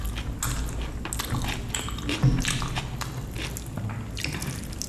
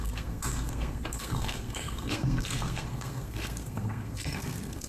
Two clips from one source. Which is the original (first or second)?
first